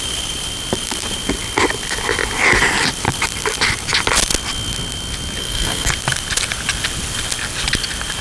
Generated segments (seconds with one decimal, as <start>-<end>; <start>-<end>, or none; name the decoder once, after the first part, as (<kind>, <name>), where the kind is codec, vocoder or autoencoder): 5.4-5.9 (codec, SNAC)